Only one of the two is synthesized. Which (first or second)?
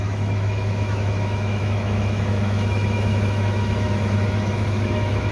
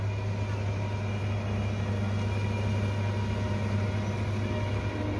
first